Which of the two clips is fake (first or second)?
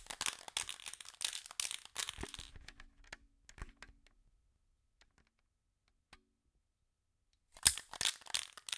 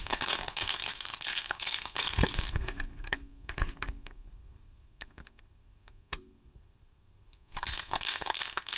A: second